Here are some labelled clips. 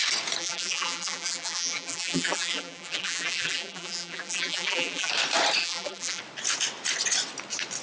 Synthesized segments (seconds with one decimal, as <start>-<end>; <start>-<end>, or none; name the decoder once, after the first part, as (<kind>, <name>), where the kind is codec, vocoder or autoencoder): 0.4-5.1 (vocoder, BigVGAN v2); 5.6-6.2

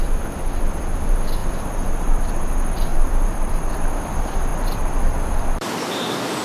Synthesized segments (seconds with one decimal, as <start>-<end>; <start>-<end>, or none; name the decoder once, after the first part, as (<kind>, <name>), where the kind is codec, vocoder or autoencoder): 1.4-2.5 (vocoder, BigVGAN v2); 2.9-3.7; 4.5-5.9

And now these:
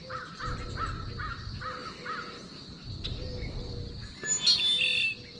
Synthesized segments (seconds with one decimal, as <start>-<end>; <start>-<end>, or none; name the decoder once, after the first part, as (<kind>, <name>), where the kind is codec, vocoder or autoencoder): none